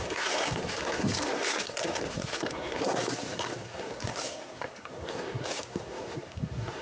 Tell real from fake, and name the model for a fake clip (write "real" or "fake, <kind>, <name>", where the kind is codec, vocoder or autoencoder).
fake, codec, SNAC